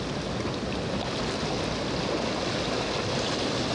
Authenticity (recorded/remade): recorded